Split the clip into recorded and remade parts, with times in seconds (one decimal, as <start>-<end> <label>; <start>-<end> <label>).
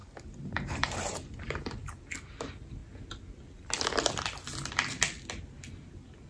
0.0-2.0 remade; 2.0-6.3 recorded